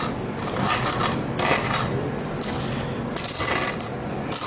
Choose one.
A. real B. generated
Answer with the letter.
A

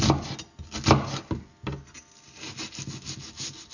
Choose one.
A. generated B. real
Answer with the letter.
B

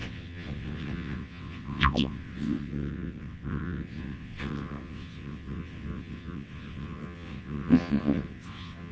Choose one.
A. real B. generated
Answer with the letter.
B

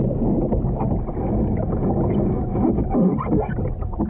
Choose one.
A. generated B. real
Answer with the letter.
B